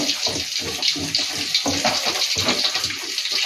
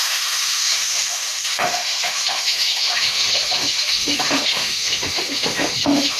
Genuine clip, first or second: first